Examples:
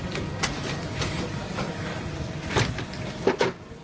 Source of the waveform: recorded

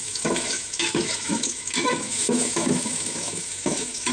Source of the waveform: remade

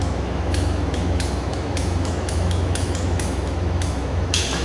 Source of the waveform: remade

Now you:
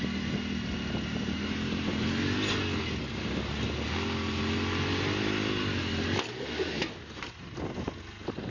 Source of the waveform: recorded